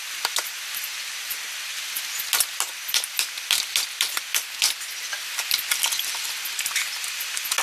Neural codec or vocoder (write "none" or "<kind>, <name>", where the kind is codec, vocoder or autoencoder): none